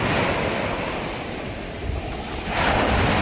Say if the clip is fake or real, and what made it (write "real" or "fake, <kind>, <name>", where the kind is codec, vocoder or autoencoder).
real